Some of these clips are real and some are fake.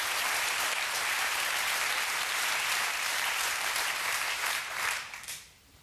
fake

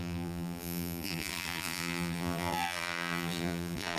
fake